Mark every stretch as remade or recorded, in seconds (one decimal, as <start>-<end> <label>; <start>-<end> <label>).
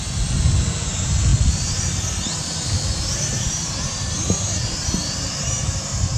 0.0-2.3 recorded; 2.3-6.2 remade